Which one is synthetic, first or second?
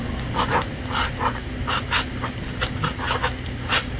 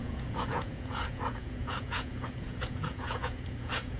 second